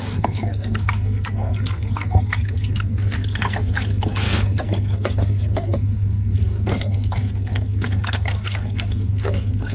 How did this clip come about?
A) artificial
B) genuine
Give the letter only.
A